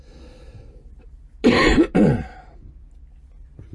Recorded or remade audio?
recorded